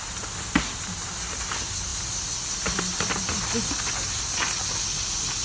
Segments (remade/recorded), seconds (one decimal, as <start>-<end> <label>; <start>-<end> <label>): 0.0-5.4 recorded